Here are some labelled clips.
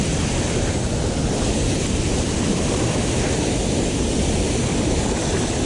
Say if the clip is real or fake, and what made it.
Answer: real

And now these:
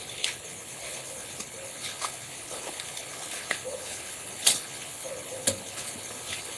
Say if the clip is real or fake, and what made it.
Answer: fake, codec, HILCodec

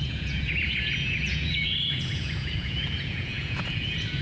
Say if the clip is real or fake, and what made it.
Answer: fake, vocoder, Vocos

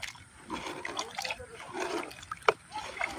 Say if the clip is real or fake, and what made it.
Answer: real